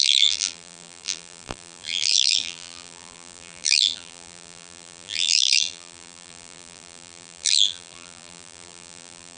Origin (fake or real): fake